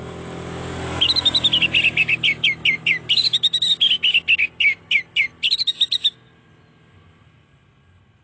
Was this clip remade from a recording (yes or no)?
no